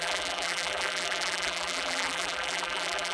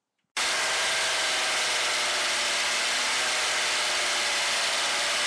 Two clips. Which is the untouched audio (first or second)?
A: second